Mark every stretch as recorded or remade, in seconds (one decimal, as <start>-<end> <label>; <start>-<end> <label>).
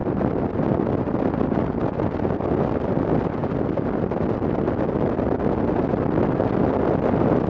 0.0-7.5 recorded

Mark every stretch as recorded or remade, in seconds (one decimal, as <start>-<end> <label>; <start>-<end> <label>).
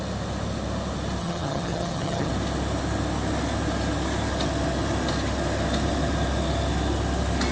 0.0-1.2 recorded; 1.2-2.3 remade; 2.3-7.5 recorded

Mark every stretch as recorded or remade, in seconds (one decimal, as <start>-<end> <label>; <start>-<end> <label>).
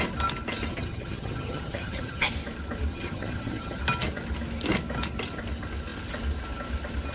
0.0-0.7 recorded; 0.7-2.3 remade; 2.3-2.9 recorded; 2.9-3.8 remade; 3.8-7.1 recorded